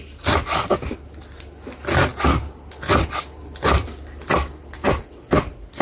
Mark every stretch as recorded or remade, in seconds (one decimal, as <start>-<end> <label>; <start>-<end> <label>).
0.0-5.8 recorded

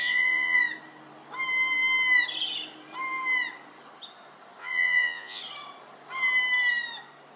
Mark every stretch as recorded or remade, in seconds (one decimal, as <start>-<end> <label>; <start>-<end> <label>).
0.0-0.6 remade; 0.6-4.6 recorded; 4.6-5.4 remade; 5.4-7.4 recorded

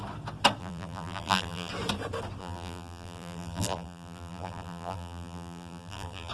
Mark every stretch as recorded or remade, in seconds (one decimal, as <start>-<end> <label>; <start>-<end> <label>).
0.0-0.6 recorded; 0.6-1.7 remade; 1.7-2.4 recorded; 2.4-6.3 remade

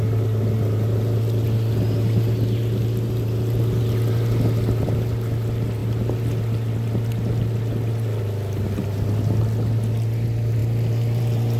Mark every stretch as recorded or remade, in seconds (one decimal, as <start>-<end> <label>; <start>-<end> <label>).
0.0-11.6 recorded

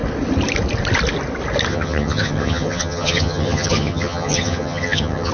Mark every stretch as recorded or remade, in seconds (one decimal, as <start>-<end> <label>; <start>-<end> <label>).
0.0-1.7 recorded; 1.7-5.3 remade